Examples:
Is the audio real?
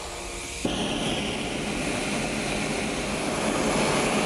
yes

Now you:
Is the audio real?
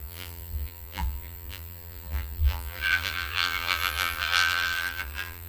no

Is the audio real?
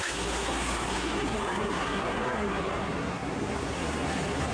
no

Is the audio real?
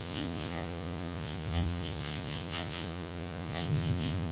no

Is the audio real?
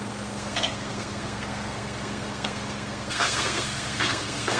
no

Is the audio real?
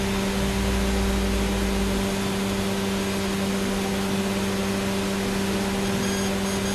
yes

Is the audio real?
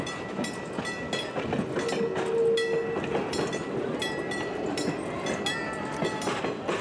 yes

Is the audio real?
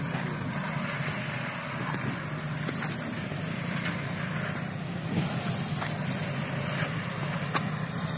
yes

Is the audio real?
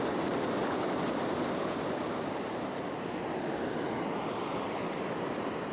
yes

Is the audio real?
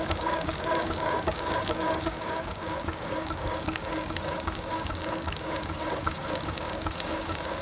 no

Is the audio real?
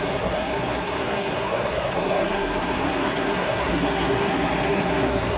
no